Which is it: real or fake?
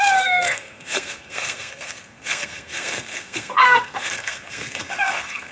fake